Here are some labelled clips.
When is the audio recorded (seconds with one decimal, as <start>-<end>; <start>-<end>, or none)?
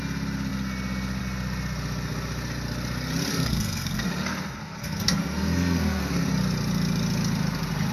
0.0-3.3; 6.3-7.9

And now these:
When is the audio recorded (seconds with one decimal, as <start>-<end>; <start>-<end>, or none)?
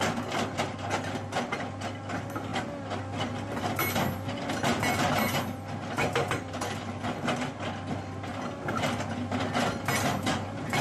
0.0-10.8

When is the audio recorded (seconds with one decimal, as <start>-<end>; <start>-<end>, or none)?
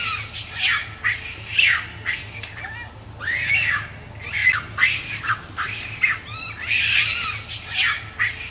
0.0-8.5